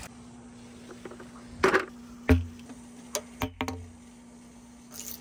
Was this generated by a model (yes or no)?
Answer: no